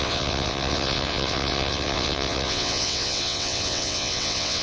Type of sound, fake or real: fake